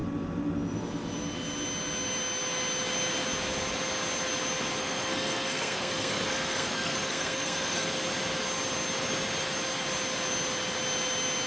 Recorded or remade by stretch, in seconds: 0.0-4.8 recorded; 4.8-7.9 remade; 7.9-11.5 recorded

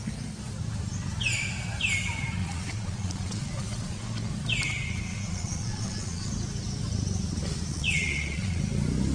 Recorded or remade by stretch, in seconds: 0.0-2.4 recorded; 2.4-4.3 remade; 4.3-5.1 recorded; 5.1-6.3 remade; 6.3-7.7 recorded; 7.7-8.6 remade; 8.6-9.1 recorded

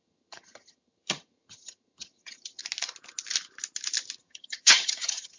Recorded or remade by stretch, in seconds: 0.0-2.6 remade; 2.6-4.2 recorded; 4.2-5.4 remade

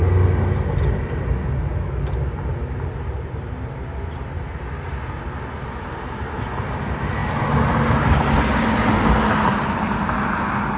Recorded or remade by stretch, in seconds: 0.0-10.8 recorded